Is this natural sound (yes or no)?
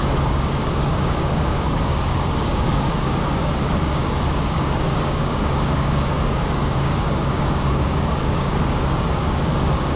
no